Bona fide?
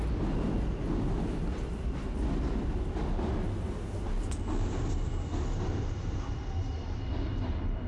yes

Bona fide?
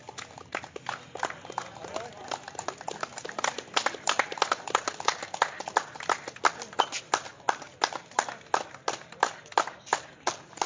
yes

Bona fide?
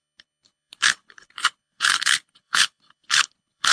no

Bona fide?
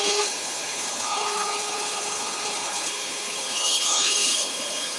no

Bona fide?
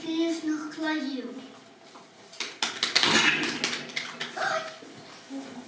yes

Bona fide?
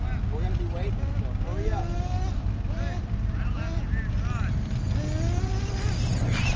yes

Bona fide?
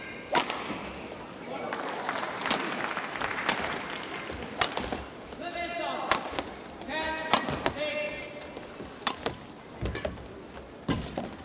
yes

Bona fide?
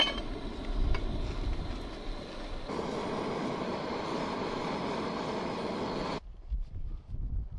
yes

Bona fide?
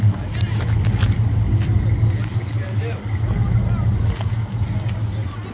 yes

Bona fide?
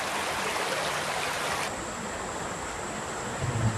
yes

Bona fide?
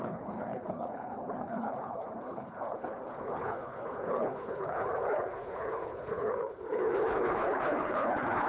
no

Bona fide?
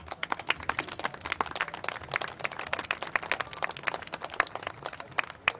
yes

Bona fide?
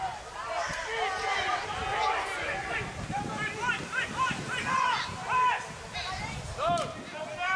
yes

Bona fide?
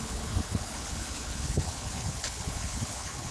no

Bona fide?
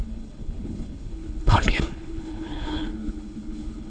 no